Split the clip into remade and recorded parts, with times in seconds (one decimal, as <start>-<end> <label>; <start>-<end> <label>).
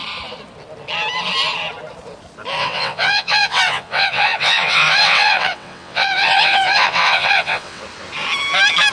0.0-2.6 recorded; 2.6-7.8 remade; 7.8-8.9 recorded